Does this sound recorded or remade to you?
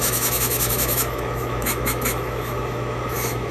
remade